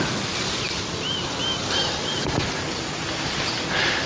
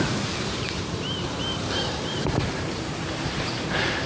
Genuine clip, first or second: first